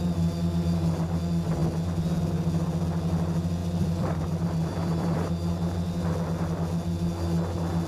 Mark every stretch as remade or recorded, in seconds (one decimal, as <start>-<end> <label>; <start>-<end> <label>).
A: 0.0-3.6 recorded; 3.6-5.3 remade; 5.3-7.9 recorded